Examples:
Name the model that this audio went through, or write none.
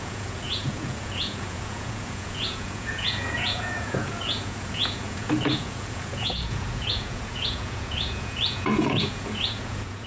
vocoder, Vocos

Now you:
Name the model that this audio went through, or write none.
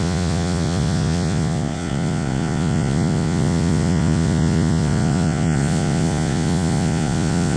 vocoder, Vocos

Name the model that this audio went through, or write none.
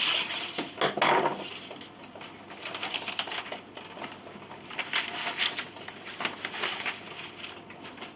none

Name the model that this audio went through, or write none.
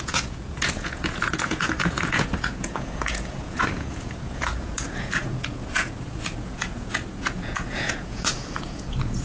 vocoder, Vocos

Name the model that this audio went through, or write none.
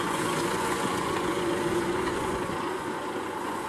vocoder, Vocos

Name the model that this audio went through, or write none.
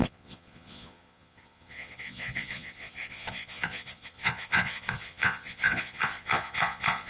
vocoder, Vocos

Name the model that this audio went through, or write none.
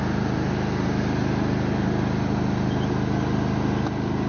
none